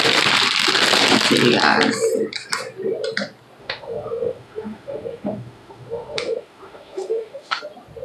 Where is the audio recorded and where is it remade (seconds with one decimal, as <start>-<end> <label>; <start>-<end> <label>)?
0.0-3.6 recorded; 3.6-7.6 remade; 7.6-8.0 recorded